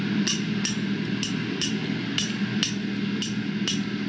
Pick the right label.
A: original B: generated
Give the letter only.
A